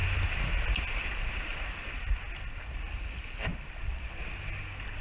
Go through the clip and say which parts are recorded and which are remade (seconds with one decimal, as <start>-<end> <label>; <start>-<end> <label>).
0.0-5.0 recorded